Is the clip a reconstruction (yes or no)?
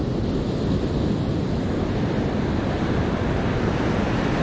no